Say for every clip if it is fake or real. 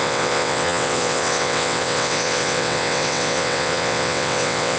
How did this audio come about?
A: fake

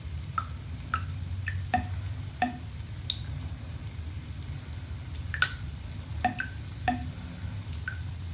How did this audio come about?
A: real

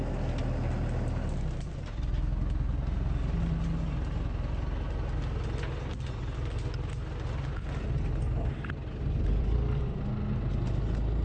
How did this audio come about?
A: real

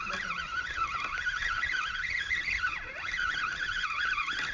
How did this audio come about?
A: real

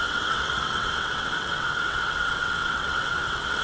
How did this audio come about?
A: fake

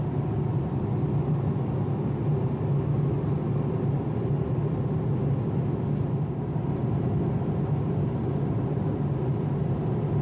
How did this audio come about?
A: real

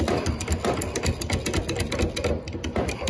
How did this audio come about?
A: real